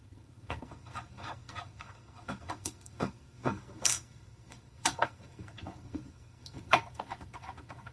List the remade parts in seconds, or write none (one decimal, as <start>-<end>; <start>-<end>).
0.0-7.9